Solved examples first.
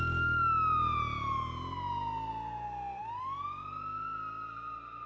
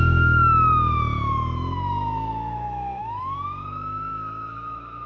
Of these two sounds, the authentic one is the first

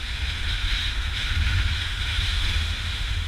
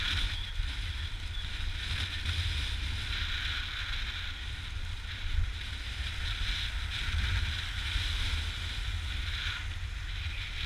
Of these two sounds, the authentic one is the second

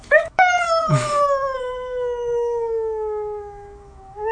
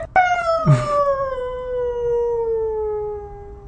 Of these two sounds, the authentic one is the second